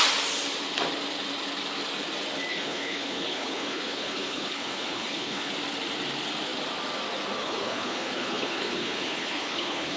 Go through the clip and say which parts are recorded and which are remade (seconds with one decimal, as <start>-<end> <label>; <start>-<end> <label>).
0.0-2.5 recorded; 2.5-5.5 remade; 5.5-7.4 recorded; 7.4-10.0 remade